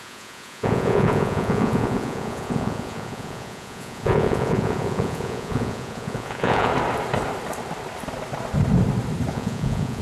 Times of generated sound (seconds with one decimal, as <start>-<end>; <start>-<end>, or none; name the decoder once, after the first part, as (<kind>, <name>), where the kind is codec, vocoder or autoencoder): 0.0-6.7 (vocoder, Vocos); 9.3-10.0